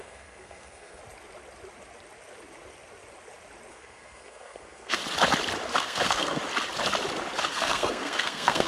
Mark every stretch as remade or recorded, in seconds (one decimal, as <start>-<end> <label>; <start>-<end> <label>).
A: 0.0-1.0 remade; 1.0-3.7 recorded; 3.7-5.0 remade; 5.0-5.8 recorded; 5.8-6.4 remade; 6.4-7.5 recorded; 7.5-8.7 remade